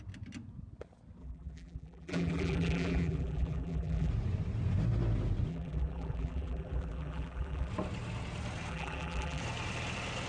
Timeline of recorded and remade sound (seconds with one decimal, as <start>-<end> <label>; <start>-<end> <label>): 0.0-1.2 recorded; 1.2-4.1 remade; 4.1-5.5 recorded; 5.5-7.7 remade; 7.7-8.7 recorded; 8.7-9.4 remade; 9.4-10.3 recorded